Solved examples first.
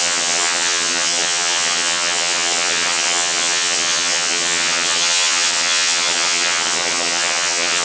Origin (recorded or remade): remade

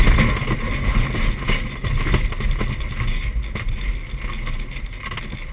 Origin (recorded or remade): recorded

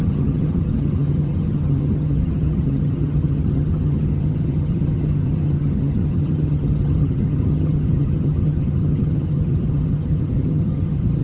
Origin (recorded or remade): remade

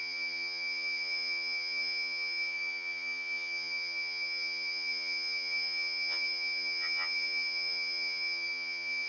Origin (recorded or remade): remade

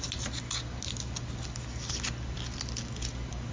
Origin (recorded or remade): recorded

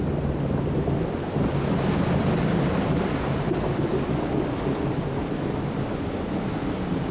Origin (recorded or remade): recorded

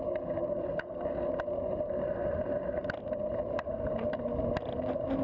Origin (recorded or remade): recorded